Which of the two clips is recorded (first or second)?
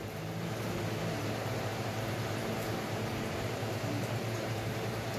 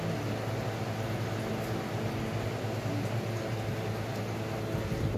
second